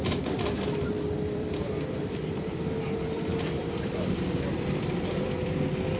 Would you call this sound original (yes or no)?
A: no